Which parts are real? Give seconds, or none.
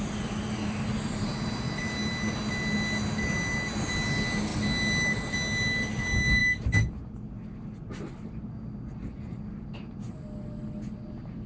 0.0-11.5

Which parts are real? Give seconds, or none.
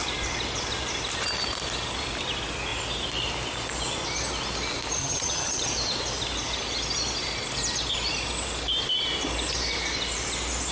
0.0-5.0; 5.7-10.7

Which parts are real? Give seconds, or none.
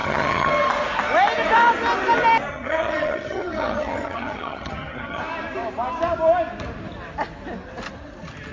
0.5-2.5; 5.2-8.5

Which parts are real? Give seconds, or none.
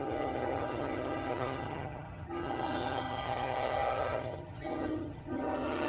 none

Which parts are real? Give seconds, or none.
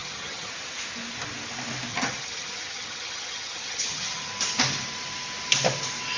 0.5-1.9; 4.3-6.2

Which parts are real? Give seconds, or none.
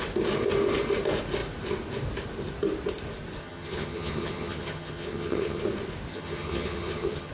0.0-3.4; 5.6-6.1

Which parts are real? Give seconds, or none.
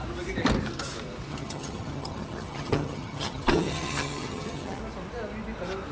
0.0-1.3; 4.8-5.9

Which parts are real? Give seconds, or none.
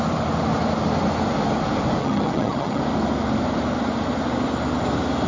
0.0-2.0; 2.8-5.3